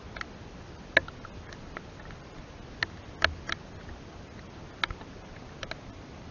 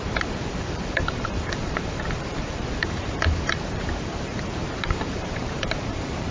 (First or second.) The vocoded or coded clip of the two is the second